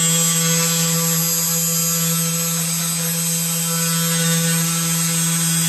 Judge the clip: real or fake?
real